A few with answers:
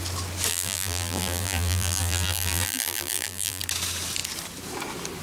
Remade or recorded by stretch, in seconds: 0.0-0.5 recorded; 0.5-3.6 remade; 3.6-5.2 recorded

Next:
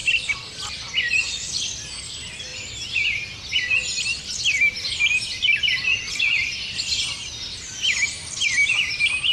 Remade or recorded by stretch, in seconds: 0.0-9.3 recorded

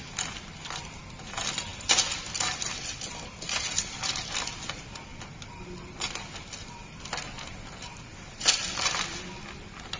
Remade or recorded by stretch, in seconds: 0.0-10.0 recorded

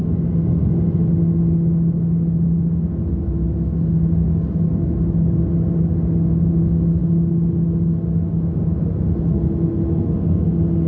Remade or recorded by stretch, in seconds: 0.0-10.9 recorded

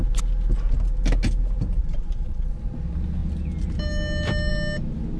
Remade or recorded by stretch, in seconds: 0.0-1.8 recorded; 1.8-2.5 remade; 2.5-5.2 recorded

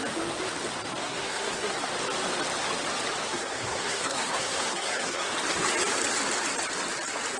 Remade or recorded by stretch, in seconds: 0.0-1.0 recorded; 1.0-1.8 remade; 1.8-3.3 recorded; 3.3-5.3 remade; 5.3-7.4 recorded

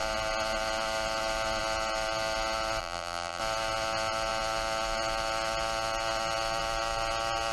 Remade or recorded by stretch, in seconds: 0.0-2.8 recorded; 2.8-3.4 remade; 3.4-7.5 recorded